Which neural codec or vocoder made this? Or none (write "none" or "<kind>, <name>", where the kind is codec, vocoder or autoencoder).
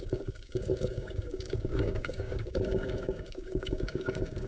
codec, DAC